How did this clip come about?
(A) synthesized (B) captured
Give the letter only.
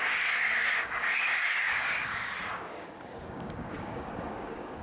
A